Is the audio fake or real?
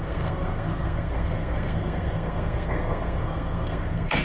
fake